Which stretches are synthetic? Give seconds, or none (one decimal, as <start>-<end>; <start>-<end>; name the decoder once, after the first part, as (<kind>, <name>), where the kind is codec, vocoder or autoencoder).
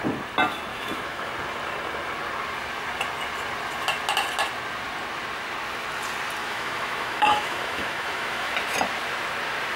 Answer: 0.7-1.3 (autoencoder, DAC-VAE); 6.4-8.5